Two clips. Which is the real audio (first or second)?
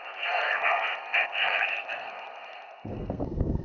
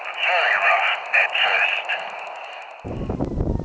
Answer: second